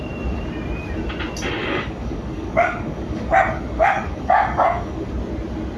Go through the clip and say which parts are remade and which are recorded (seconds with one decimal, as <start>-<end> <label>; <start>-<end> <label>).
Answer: 0.0-1.6 recorded; 1.6-5.1 remade; 5.1-5.8 recorded